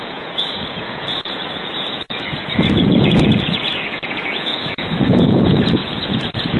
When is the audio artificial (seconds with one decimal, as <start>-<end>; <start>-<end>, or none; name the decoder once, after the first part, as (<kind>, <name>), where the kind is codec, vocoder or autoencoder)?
0.0-6.6 (vocoder, Vocos)